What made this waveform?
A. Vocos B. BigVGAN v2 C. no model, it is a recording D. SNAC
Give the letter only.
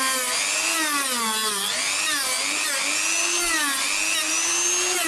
C